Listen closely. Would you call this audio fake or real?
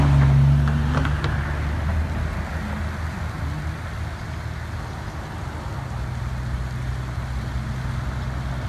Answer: real